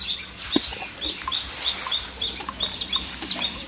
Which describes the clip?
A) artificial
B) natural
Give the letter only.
B